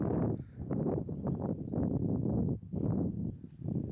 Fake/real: real